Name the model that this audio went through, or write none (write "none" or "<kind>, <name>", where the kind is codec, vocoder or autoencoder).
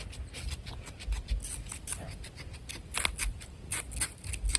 none